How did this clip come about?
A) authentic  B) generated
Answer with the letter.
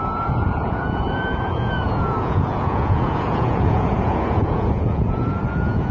B